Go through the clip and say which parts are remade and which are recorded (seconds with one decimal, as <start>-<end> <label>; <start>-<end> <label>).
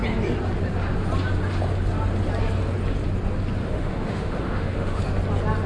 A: 0.0-3.6 recorded; 3.6-5.0 remade; 5.0-5.7 recorded